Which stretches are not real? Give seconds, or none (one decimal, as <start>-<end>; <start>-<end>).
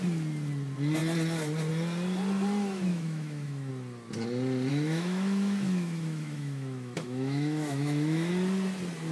2.9-3.7; 4.7-8.3